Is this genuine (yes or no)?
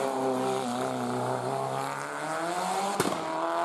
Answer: yes